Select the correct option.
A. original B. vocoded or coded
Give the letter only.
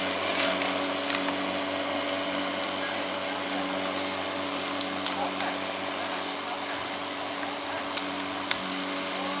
A